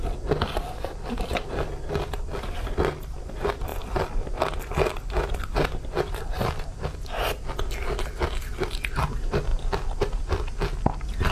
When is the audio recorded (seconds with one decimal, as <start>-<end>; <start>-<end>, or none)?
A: 0.0-11.3